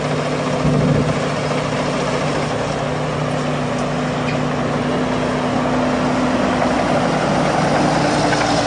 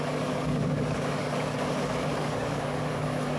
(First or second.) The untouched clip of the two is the first